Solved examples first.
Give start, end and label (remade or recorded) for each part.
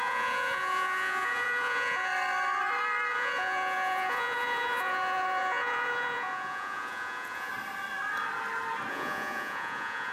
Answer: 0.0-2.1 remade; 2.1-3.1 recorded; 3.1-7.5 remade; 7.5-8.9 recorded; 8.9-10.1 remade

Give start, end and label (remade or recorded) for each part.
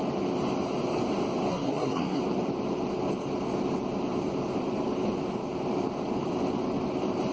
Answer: 0.0-1.5 recorded; 1.5-2.2 remade; 2.2-7.3 recorded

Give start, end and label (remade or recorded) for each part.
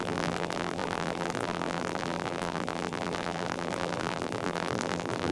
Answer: 0.0-5.3 remade